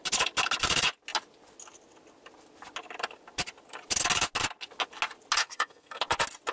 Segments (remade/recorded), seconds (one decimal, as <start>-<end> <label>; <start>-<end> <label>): 0.0-5.4 recorded; 5.4-6.0 remade; 6.0-6.5 recorded